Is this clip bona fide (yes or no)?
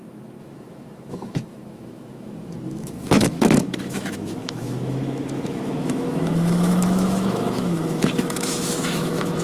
no